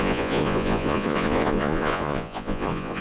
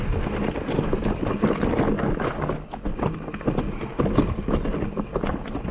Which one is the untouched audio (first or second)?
second